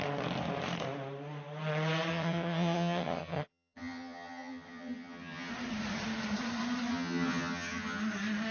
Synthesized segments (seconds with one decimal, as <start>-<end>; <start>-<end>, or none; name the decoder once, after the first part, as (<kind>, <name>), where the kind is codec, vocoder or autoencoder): 2.1-5.5 (vocoder, HiFi-GAN); 6.9-8.0